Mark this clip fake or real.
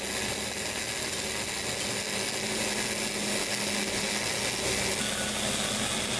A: real